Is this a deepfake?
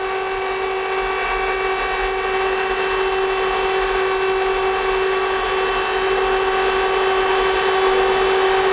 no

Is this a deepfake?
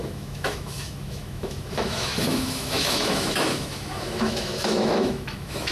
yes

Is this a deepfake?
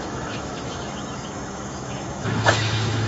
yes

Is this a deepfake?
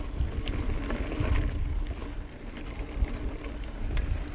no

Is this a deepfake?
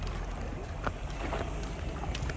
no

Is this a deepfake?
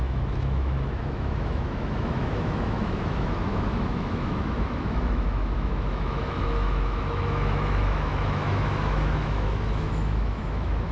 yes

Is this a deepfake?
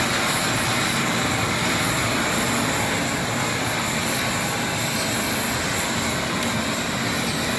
no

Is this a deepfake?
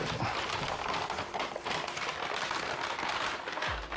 no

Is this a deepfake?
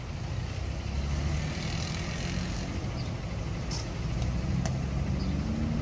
no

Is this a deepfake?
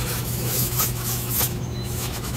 yes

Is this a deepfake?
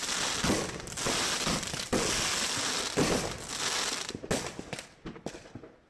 no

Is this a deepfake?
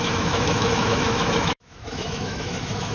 yes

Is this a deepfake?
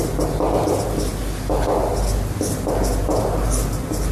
no